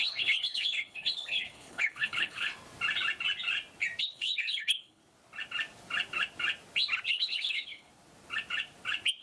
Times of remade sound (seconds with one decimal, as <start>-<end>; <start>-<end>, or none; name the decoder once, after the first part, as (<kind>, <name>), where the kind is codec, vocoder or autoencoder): 0.0-2.5 (codec, HILCodec); 4.0-5.0; 7.1-7.9